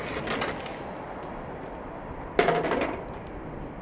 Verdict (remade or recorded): recorded